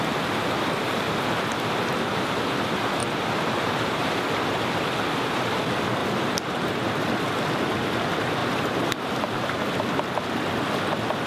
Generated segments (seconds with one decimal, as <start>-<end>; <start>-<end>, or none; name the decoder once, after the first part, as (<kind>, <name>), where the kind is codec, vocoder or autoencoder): 3.0-4.1 (vocoder, BigVGAN v2); 6.0-6.9; 8.4-9.1